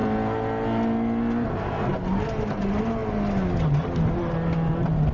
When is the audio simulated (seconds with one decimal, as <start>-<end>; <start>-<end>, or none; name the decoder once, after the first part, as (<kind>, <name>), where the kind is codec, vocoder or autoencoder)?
none